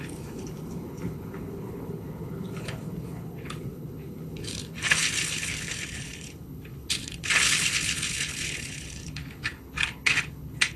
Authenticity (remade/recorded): remade